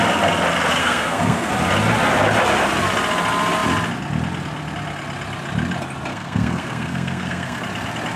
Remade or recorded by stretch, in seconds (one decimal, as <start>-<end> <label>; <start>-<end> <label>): 0.0-0.8 recorded; 0.8-1.5 remade; 1.5-6.1 recorded; 6.1-7.6 remade; 7.6-8.2 recorded